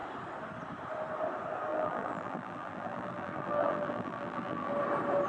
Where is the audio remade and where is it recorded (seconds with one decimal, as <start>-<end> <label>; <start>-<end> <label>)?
0.0-1.7 recorded; 1.7-4.7 remade; 4.7-5.3 recorded